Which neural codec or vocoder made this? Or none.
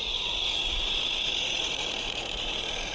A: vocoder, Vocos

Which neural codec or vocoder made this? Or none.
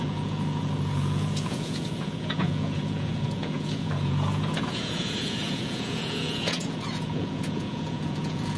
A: vocoder, Vocos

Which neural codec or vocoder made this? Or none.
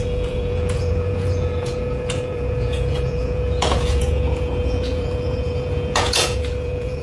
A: vocoder, Vocos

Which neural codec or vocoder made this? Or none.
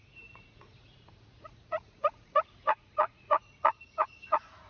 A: vocoder, Vocos